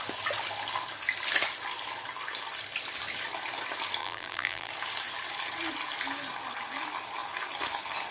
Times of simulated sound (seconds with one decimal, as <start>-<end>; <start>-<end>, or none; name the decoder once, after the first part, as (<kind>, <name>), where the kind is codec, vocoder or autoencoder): 4.0-4.7 (vocoder, BigVGAN v2)